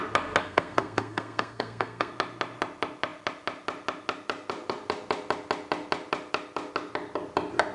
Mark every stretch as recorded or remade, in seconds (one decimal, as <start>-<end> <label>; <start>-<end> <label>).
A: 0.0-0.4 recorded; 0.4-2.1 remade; 2.1-7.7 recorded